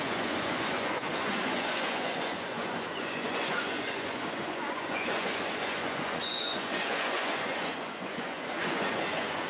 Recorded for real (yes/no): no